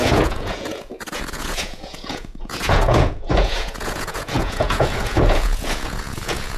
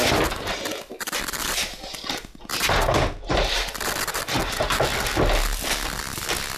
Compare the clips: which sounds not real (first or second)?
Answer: first